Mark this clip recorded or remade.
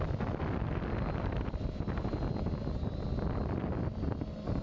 recorded